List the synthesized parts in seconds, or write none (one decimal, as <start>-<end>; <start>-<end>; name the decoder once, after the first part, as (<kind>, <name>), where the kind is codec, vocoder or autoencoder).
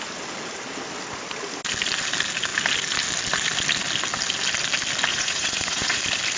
5.1-6.0 (vocoder, Vocos)